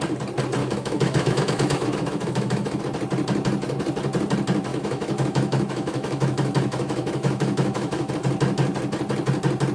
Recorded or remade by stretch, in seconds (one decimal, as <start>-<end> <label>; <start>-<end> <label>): 0.0-0.6 recorded; 0.6-2.8 remade; 2.8-4.7 recorded; 4.7-8.1 remade; 8.1-9.7 recorded